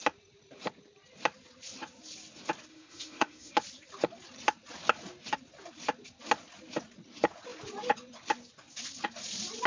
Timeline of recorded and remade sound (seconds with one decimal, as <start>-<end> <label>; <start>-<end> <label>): 0.0-2.7 recorded; 2.7-3.5 remade; 3.5-9.7 recorded